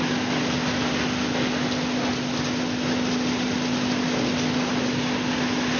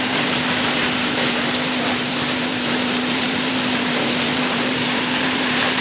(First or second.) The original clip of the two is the first